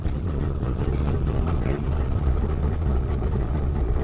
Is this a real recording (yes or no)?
no